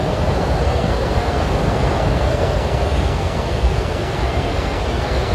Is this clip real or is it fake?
fake